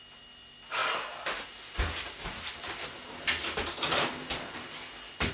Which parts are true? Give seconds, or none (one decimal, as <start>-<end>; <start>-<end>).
0.0-5.3